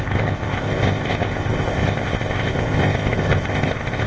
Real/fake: fake